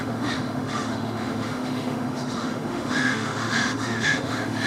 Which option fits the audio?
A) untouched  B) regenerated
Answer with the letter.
B